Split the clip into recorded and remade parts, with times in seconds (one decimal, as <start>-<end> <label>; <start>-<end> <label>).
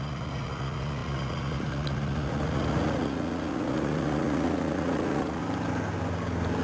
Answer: 0.0-5.4 remade; 5.4-6.6 recorded